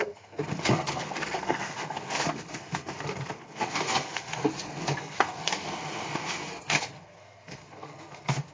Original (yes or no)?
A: no